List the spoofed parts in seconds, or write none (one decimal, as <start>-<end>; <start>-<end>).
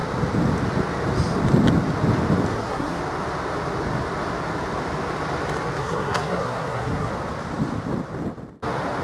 2.5-3.0; 5.8-7.1